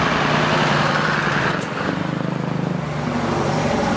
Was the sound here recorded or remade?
remade